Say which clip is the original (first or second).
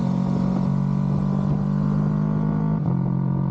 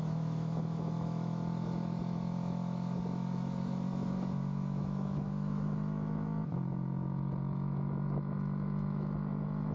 first